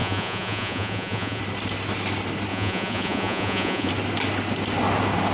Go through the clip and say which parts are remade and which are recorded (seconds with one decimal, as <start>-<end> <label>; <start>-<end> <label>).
0.0-1.4 remade; 1.4-2.5 recorded; 2.5-3.9 remade; 3.9-5.3 recorded